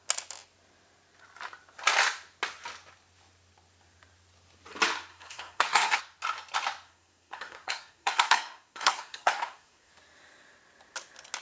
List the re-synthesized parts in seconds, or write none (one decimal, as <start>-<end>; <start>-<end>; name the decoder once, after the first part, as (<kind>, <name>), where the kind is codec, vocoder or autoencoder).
5.1-6.0 (codec, SNAC); 6.9-9.9